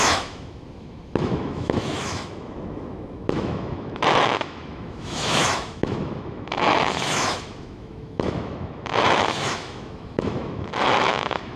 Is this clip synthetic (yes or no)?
yes